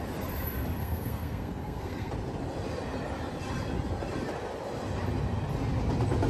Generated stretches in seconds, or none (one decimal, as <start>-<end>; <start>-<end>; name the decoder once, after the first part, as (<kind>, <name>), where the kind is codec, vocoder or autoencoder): 0.8-2.1 (codec, SNAC)